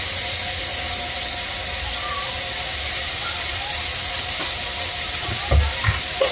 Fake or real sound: real